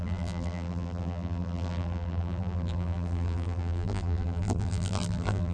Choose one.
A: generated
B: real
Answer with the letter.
A